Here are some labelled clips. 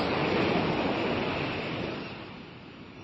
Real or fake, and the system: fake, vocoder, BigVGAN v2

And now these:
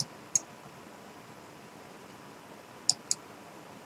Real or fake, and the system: real